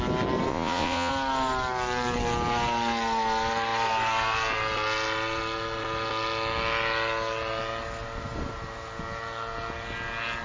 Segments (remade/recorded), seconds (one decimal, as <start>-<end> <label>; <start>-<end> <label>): 0.0-0.5 recorded; 0.5-1.1 remade; 1.1-10.4 recorded